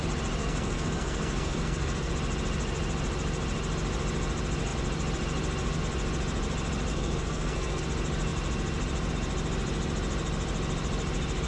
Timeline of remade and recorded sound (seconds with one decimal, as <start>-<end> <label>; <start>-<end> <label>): 0.0-0.4 recorded; 0.4-2.1 remade; 2.1-6.9 recorded; 6.9-7.8 remade; 7.8-11.5 recorded